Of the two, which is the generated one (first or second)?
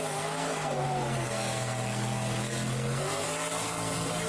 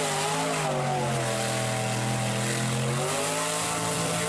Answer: first